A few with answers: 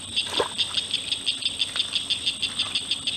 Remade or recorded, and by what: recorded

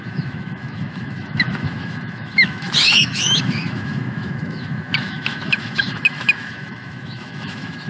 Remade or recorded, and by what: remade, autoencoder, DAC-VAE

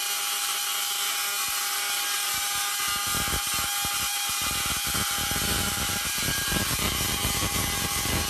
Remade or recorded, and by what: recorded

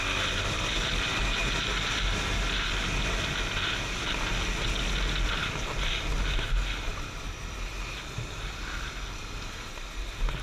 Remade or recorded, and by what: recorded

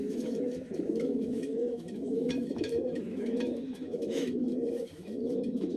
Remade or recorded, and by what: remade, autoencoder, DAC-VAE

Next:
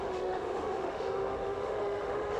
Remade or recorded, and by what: remade, autoencoder, DAC-VAE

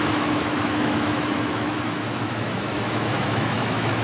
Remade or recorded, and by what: remade, autoencoder, DAC-VAE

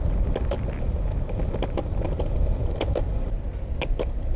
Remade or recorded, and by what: recorded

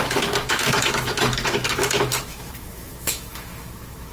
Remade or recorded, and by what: remade, autoencoder, DAC-VAE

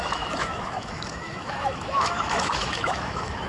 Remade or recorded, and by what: remade, autoencoder, DAC-VAE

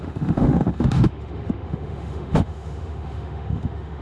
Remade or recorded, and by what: remade, autoencoder, DAC-VAE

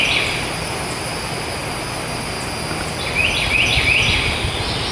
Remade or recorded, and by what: recorded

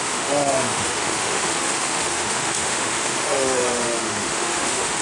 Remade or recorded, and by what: remade, autoencoder, DAC-VAE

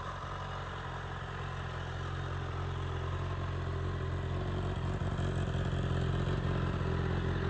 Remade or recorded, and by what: recorded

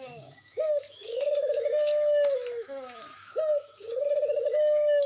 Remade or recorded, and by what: remade, autoencoder, DAC-VAE